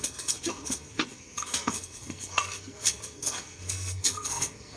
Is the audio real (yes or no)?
no